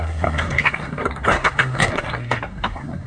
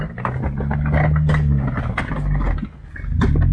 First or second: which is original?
second